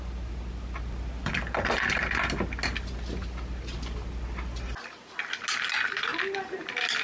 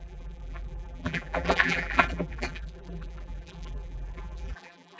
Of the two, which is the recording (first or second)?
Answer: first